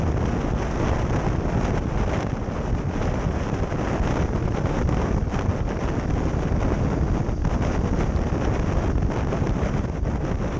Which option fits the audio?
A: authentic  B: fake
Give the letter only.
A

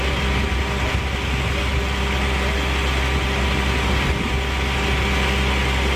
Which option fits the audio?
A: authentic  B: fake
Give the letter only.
A